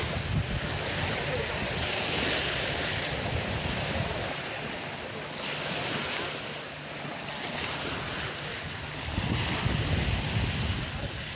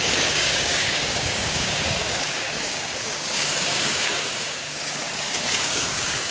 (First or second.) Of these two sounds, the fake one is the second